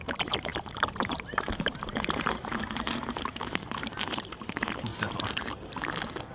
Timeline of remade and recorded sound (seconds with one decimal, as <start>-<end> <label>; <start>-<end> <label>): 0.0-4.9 remade; 4.9-6.3 recorded